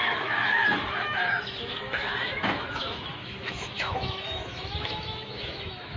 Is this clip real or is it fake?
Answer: fake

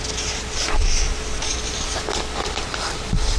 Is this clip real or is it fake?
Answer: real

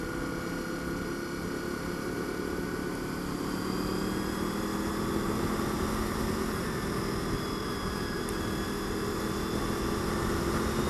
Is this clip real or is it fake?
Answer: real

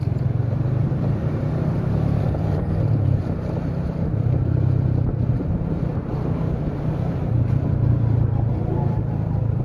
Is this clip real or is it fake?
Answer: fake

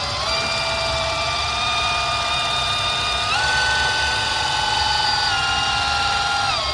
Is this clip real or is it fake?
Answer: real